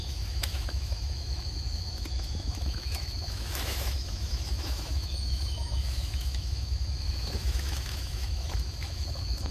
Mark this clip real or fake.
fake